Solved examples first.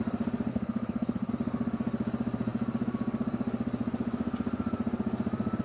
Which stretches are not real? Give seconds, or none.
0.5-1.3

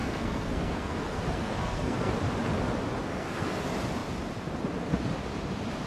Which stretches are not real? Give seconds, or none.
0.0-2.1; 3.1-3.6

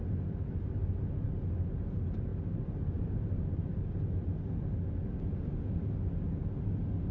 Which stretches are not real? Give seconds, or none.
none

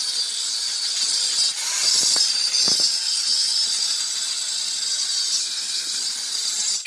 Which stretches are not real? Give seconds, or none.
5.4-6.0

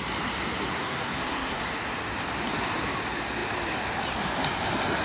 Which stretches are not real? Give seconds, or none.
0.7-1.6

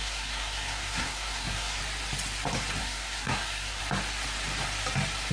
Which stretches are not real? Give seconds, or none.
0.0-1.8; 2.8-3.8